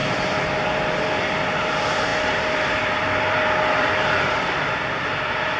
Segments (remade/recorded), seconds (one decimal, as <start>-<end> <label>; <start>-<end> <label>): 0.0-1.2 recorded; 1.2-5.6 remade